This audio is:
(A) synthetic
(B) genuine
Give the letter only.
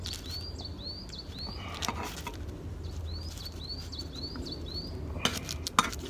B